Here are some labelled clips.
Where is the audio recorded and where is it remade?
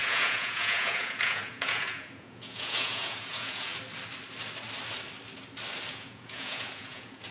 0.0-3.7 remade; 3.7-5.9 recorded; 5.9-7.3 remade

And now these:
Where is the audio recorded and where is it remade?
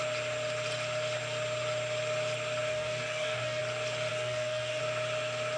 0.0-2.7 recorded; 2.7-3.6 remade; 3.6-4.1 recorded; 4.1-4.8 remade; 4.8-5.6 recorded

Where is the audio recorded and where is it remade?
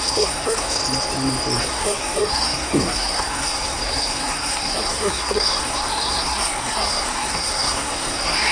0.0-0.8 remade; 0.8-1.6 recorded; 1.6-8.5 remade